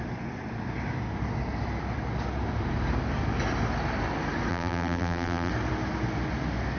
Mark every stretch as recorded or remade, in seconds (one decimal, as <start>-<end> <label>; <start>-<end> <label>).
0.0-4.5 recorded; 4.5-5.5 remade; 5.5-6.8 recorded